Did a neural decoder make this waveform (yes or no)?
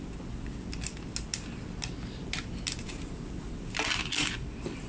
no